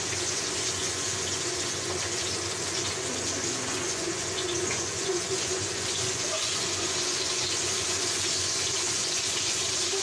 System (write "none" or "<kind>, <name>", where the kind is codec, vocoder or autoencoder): vocoder, Vocos